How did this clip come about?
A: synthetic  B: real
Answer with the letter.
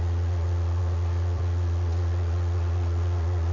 A